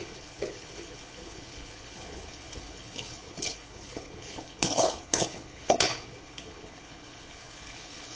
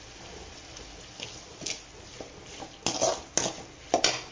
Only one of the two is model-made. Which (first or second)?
first